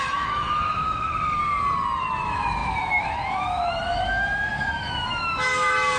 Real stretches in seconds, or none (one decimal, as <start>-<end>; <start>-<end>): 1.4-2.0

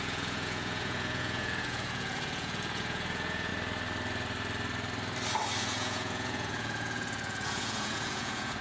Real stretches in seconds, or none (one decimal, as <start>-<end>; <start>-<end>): 3.5-5.6

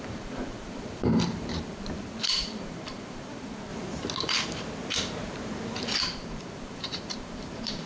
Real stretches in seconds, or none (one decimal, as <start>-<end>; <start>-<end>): 3.7-6.0